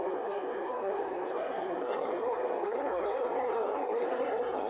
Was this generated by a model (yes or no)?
yes